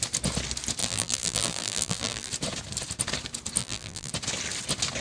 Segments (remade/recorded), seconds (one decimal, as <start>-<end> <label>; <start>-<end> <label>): 0.0-0.8 recorded; 0.8-2.3 remade; 2.3-3.6 recorded; 3.6-4.1 remade; 4.1-5.0 recorded